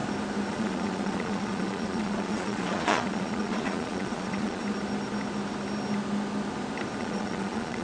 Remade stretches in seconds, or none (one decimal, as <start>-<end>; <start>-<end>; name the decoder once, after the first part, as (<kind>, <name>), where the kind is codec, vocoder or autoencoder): 0.5-4.6 (vocoder, Vocos); 7.0-7.8